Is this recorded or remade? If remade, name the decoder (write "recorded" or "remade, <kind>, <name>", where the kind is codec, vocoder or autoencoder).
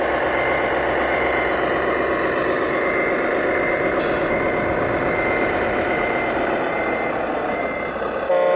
recorded